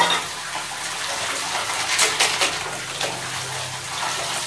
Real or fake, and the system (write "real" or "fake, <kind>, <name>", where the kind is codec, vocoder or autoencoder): real